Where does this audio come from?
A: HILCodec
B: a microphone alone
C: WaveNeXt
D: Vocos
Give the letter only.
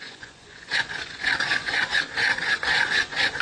D